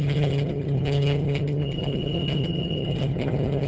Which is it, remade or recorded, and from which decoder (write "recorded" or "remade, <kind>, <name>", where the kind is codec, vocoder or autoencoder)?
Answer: remade, vocoder, HiFi-GAN